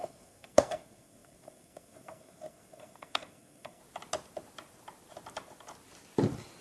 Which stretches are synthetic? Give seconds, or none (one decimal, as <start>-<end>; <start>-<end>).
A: 0.0-3.8